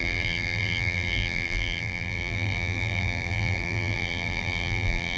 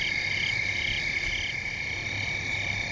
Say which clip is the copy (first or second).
first